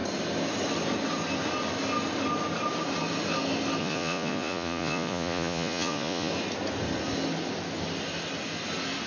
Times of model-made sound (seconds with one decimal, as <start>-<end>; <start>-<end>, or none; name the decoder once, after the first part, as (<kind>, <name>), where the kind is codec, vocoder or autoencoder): 3.8-6.3 (vocoder, Vocos)